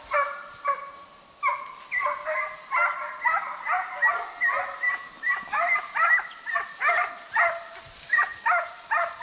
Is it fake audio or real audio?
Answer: real